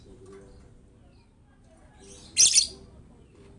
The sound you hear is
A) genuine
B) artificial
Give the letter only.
A